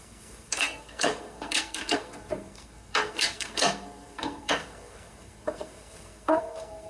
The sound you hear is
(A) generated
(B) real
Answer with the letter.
A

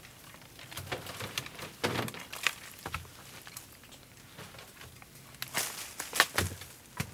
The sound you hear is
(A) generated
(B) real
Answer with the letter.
B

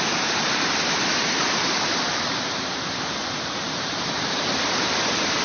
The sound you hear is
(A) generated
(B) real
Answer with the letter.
A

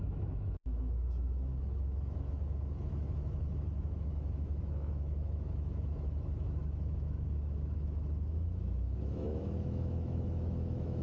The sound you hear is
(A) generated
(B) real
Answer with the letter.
A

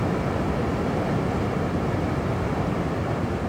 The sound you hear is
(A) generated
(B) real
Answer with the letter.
B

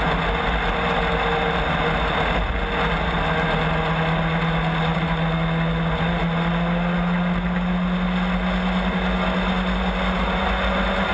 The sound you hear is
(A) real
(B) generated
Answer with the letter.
A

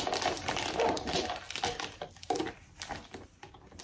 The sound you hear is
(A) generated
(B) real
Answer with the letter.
B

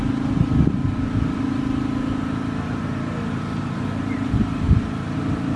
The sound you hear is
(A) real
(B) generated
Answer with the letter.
A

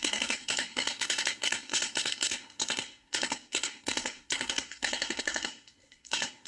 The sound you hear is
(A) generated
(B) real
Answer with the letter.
A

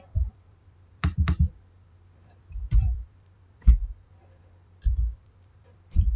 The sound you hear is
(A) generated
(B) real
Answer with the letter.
A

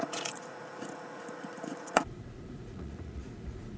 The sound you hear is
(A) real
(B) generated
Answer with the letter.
B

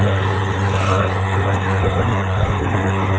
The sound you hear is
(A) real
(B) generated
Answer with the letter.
B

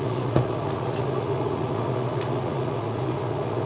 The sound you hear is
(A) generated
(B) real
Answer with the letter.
A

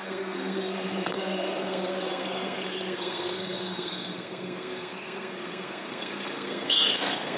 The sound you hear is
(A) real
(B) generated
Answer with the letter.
B